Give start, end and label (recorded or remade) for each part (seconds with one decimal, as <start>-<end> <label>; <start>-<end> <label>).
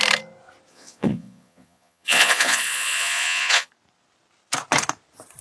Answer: 0.0-0.7 recorded; 0.7-3.7 remade; 3.7-5.4 recorded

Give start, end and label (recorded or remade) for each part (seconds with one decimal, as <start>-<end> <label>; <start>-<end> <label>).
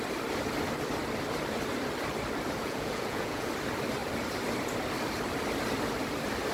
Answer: 0.0-2.6 recorded; 2.6-3.5 remade; 3.5-6.5 recorded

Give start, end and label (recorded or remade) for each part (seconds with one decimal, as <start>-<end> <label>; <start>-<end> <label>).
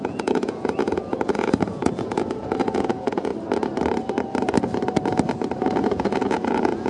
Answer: 0.0-3.3 remade; 3.3-5.6 recorded; 5.6-6.9 remade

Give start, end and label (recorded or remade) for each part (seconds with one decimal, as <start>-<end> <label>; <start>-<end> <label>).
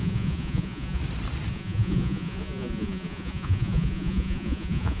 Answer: 0.0-1.0 remade; 1.0-1.5 recorded; 1.5-5.0 remade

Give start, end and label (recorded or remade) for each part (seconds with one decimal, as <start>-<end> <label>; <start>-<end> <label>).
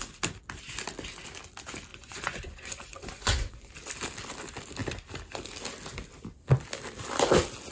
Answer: 0.0-1.9 recorded; 1.9-3.7 remade; 3.7-7.7 recorded